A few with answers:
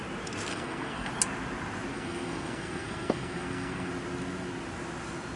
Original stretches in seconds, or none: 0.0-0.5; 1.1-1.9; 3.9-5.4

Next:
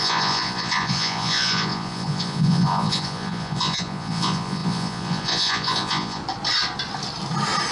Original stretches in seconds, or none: 6.2-7.7

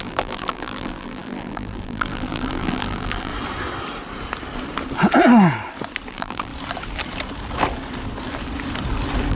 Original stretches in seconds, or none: 3.3-6.1; 6.5-9.3

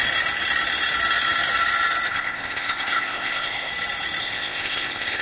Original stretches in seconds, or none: 0.0-2.1; 3.7-4.2

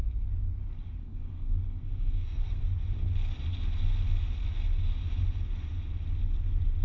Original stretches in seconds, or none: 0.0-1.0; 2.6-6.8